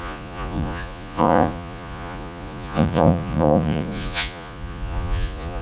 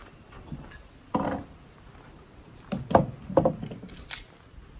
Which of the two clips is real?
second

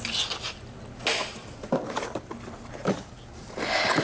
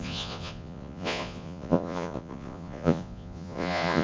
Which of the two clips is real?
first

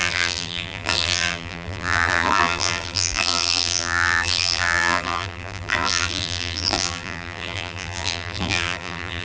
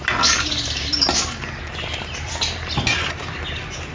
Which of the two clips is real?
second